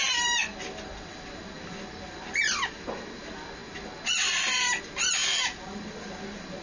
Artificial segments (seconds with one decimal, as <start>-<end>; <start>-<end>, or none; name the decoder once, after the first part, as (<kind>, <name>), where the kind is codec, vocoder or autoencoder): none